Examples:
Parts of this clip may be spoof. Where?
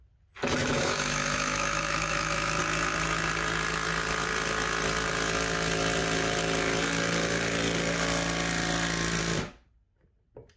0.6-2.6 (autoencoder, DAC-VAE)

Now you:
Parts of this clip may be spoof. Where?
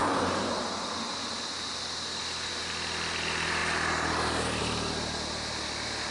none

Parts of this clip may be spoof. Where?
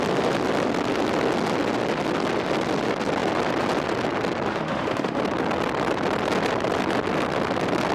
4.5-5.2 (autoencoder, DAC-VAE)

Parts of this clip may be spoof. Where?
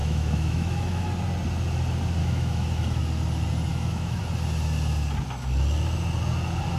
0.0-1.1 (autoencoder, DAC-VAE); 2.2-3.0; 3.7-4.2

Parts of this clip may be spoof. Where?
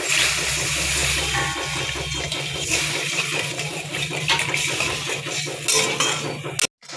none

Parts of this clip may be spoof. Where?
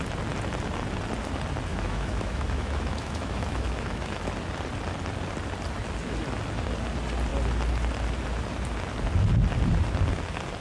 1.7-4.3 (autoencoder, DAC-VAE)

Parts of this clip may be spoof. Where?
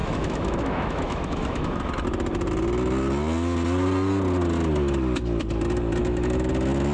0.0-1.8 (autoencoder, DAC-VAE); 6.0-6.5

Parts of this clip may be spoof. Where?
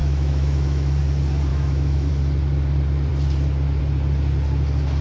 0.0-1.0 (autoencoder, DAC-VAE); 1.5-2.1